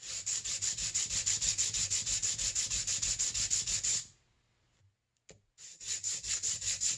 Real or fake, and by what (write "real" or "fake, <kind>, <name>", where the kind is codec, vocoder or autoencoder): real